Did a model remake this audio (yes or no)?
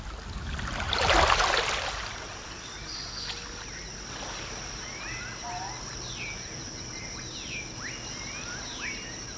no